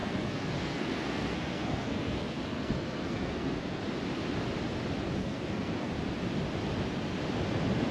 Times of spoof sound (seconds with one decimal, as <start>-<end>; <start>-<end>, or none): 0.0-3.8; 5.2-5.9